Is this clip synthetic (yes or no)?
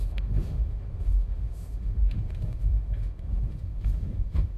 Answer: yes